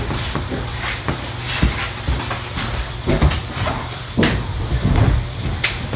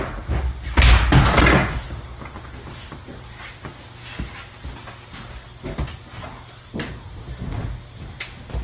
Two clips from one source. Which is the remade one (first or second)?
first